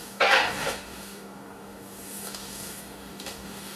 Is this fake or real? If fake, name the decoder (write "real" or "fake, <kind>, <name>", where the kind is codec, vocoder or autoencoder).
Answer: fake, codec, DAC